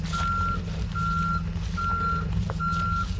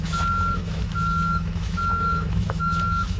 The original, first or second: first